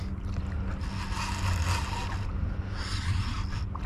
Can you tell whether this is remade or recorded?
recorded